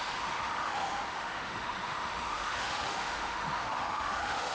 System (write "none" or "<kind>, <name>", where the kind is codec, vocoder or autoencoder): autoencoder, DAC-VAE